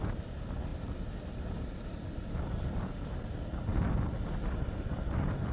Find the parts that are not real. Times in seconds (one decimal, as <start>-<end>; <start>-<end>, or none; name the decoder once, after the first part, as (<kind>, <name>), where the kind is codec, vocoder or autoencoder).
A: 3.7-5.5 (vocoder, BigVGAN v2)